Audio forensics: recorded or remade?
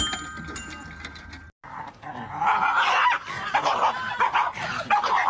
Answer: recorded